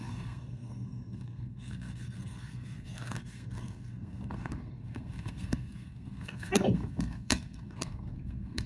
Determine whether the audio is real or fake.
fake